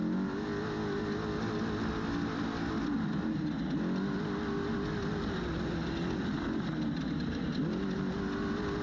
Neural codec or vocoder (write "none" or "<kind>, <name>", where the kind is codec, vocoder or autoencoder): none